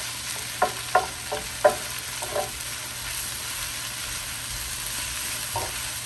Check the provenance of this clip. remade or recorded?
recorded